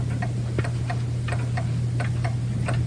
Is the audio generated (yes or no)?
no